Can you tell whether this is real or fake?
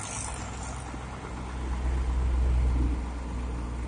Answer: real